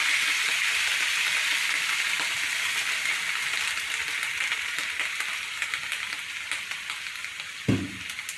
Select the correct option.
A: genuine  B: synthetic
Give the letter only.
A